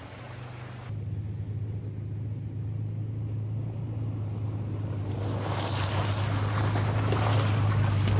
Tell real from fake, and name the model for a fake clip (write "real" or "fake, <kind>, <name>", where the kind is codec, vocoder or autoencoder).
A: real